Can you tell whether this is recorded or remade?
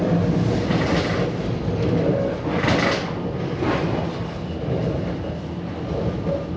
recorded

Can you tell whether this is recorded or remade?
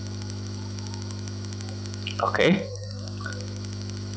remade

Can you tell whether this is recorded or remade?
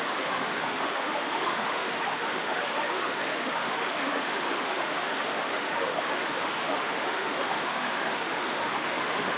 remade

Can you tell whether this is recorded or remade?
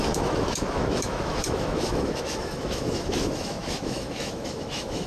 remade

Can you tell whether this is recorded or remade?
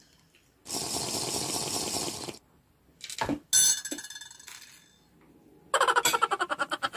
recorded